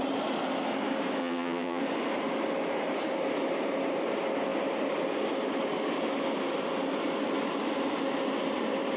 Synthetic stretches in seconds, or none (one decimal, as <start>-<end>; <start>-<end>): 1.2-1.8